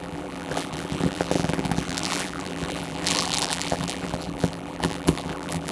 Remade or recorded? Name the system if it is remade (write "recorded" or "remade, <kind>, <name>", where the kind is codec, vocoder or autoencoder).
remade, vocoder, BigVGAN v2